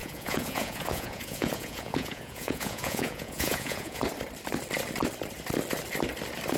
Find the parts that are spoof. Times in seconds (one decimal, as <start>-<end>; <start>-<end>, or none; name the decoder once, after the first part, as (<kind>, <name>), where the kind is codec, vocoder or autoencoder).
0.0-4.0 (vocoder, Vocos)